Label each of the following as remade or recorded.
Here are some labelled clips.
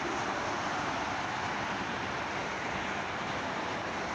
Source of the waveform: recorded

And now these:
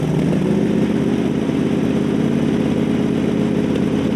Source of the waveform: recorded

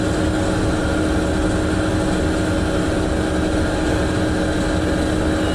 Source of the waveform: recorded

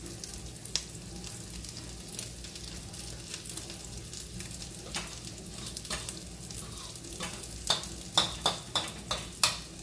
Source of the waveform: recorded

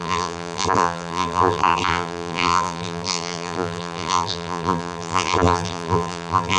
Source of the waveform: remade